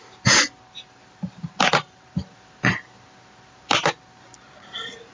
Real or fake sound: fake